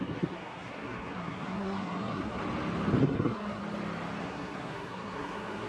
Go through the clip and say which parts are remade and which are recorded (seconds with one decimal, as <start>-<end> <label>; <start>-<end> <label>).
0.0-2.4 remade; 2.4-3.0 recorded; 3.0-3.6 remade; 3.6-4.2 recorded; 4.2-5.7 remade